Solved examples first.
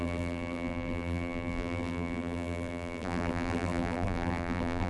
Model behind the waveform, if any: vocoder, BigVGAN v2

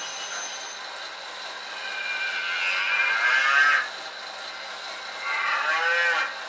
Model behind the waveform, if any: none